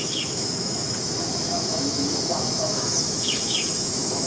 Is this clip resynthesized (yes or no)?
yes